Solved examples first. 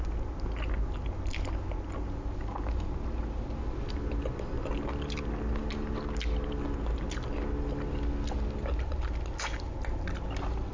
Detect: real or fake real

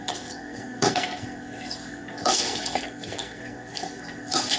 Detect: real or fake fake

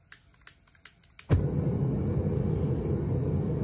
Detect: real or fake real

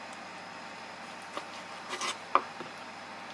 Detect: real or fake real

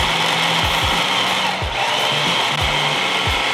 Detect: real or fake real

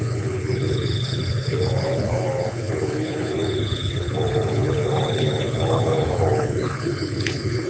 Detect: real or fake fake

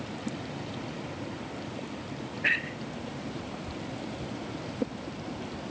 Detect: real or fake real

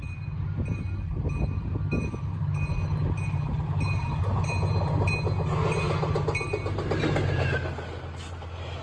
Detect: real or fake real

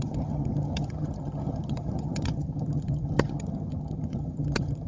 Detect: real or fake fake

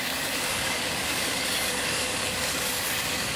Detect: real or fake fake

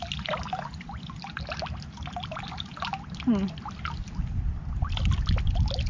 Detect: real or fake real